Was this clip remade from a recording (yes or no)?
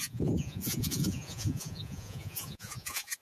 yes